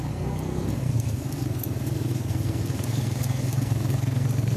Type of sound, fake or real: fake